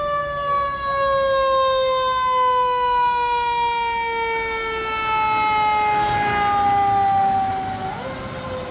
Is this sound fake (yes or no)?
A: no